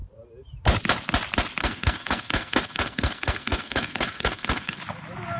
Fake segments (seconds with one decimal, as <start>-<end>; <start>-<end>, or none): 1.6-4.8